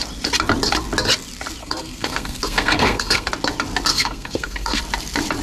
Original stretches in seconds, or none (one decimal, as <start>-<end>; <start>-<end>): 0.0-1.6; 3.3-3.9; 4.8-5.4